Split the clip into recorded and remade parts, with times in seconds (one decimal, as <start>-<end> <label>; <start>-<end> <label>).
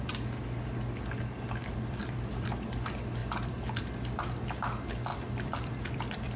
0.0-1.6 recorded; 1.6-2.5 remade; 2.5-3.2 recorded; 3.2-3.8 remade; 3.8-5.1 recorded; 5.1-6.4 remade